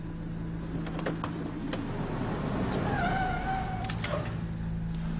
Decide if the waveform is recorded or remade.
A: recorded